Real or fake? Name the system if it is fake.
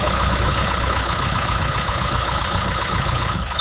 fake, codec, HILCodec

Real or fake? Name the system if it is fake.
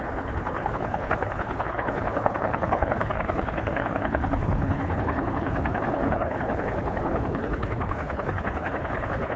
fake, codec, HILCodec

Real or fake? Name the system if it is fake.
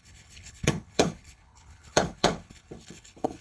fake, codec, HILCodec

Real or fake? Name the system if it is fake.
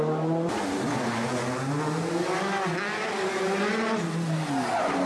real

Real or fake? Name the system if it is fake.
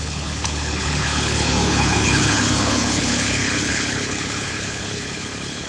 fake, codec, HILCodec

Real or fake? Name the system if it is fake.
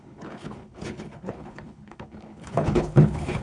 fake, codec, HILCodec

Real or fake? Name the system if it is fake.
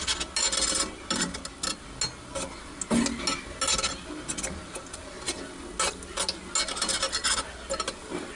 real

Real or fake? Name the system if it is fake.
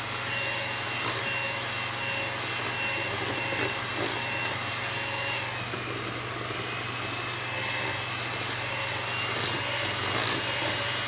real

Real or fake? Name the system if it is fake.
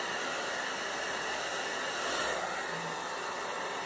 real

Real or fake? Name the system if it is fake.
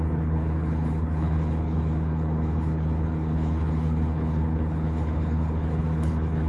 fake, codec, HILCodec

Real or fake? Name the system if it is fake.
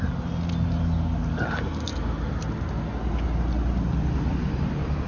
real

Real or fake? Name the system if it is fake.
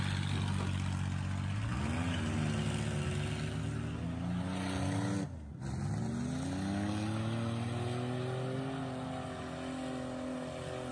real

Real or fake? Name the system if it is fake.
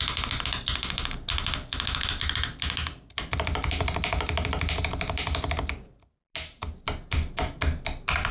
real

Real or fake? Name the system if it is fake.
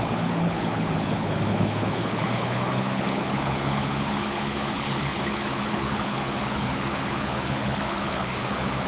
fake, codec, HILCodec